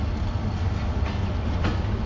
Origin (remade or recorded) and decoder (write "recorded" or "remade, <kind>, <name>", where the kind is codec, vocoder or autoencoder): recorded